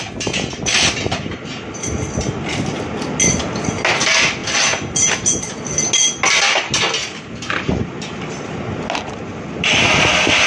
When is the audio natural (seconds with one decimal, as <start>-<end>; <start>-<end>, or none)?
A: 0.0-10.5